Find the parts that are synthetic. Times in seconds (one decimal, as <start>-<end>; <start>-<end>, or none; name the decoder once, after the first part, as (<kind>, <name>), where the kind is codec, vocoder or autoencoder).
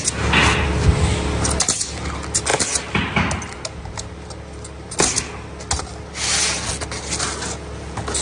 none